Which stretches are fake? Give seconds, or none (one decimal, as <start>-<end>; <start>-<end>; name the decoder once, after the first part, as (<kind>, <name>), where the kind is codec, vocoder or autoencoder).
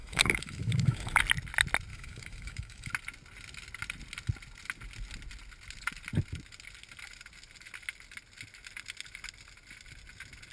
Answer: 0.0-1.2 (autoencoder, DAC-VAE); 1.9-2.9